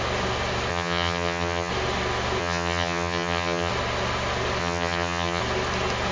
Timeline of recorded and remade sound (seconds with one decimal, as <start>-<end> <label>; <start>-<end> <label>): 0.0-0.7 recorded; 0.7-1.7 remade; 1.7-2.4 recorded; 2.4-3.7 remade; 3.7-4.6 recorded; 4.6-5.4 remade; 5.4-6.1 recorded